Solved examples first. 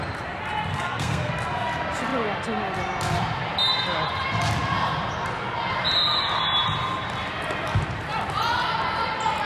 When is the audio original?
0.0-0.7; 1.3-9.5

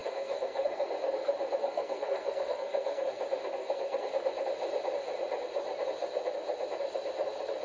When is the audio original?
0.9-1.6; 3.2-3.6; 4.1-7.6

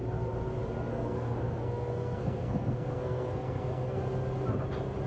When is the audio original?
0.0-0.9; 4.0-5.1

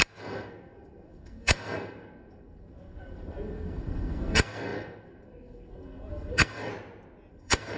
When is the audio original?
6.7-7.3

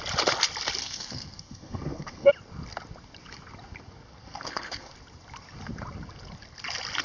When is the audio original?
0.0-0.8; 2.3-4.2; 4.9-7.0

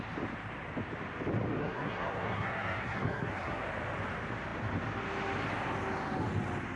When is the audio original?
0.0-1.6; 3.6-6.8

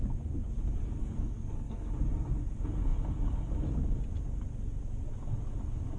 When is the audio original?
0.0-1.0; 1.9-6.0